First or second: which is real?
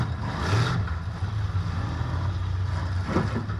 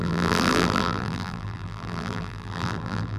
first